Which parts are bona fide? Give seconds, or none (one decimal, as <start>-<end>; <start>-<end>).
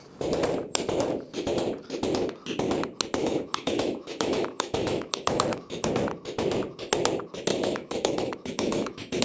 0.0-3.2; 5.9-7.5